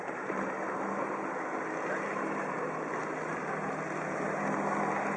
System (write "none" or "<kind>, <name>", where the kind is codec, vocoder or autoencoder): none